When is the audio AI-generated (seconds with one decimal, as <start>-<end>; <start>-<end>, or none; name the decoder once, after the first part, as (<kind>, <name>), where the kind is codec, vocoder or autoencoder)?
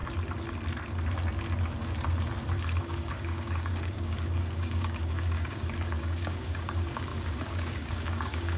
2.8-8.6 (codec, DAC)